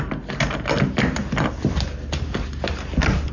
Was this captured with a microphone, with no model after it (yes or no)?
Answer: yes